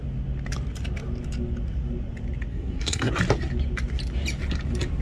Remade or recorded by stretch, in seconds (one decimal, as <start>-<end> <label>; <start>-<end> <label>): 0.0-2.5 recorded; 2.5-3.1 remade; 3.1-5.0 recorded